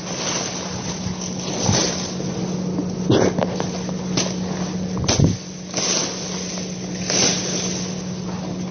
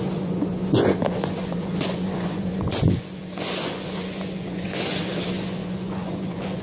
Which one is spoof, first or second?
second